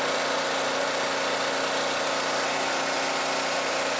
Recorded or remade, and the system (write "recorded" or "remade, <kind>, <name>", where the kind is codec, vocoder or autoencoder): recorded